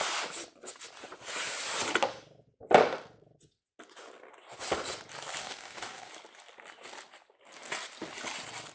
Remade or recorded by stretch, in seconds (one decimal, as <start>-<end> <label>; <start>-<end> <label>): 0.0-5.4 recorded; 5.4-6.1 remade; 6.1-8.7 recorded